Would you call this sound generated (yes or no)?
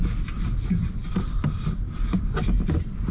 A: no